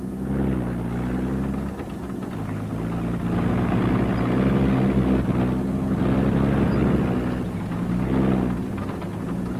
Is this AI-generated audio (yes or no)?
no